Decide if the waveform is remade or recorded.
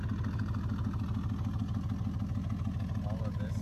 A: recorded